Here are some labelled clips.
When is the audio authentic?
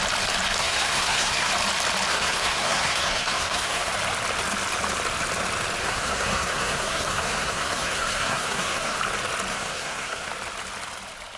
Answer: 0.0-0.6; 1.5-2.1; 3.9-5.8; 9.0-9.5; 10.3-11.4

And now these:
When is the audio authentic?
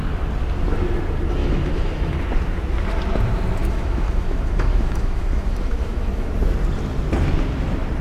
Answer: 0.0-1.4; 2.2-3.6; 6.3-8.0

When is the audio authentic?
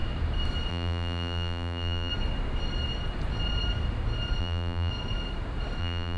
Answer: 0.0-0.7; 2.1-4.4; 4.9-5.8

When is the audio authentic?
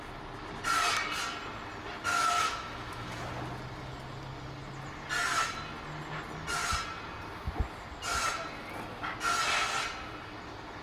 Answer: 0.0-2.1; 3.2-10.8